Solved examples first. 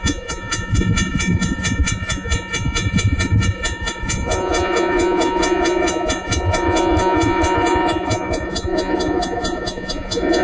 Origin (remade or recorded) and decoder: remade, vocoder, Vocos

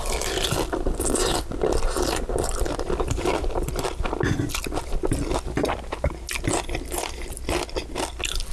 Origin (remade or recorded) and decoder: recorded